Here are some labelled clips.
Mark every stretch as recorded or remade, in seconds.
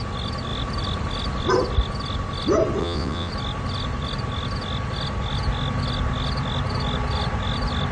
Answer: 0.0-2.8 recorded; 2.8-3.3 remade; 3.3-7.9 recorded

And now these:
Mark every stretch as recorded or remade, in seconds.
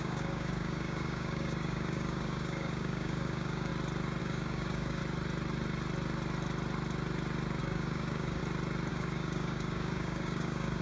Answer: 0.0-3.7 remade; 3.7-4.2 recorded; 4.2-5.0 remade; 5.0-7.6 recorded; 7.6-8.4 remade; 8.4-8.9 recorded; 8.9-10.8 remade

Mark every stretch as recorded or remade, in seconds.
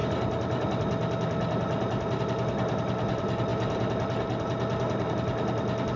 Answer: 0.0-6.0 recorded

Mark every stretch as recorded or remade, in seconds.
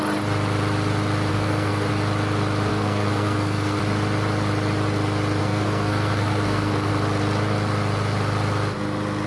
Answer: 0.0-1.3 recorded; 1.3-1.9 remade; 1.9-2.7 recorded; 2.7-3.8 remade; 3.8-5.4 recorded; 5.4-6.9 remade; 6.9-9.3 recorded